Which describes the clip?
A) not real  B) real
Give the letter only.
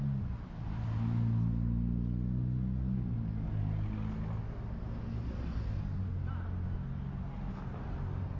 B